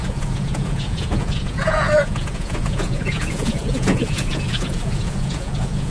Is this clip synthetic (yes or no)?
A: yes